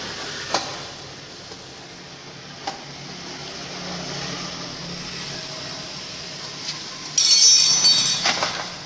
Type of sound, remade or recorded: recorded